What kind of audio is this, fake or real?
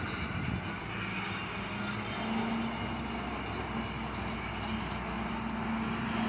real